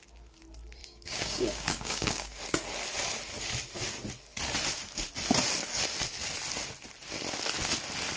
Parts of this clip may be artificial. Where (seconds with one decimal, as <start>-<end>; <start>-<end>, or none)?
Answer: 0.8-2.4

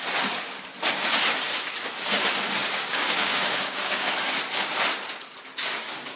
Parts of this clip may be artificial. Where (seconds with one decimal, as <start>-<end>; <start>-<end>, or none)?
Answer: 2.6-4.3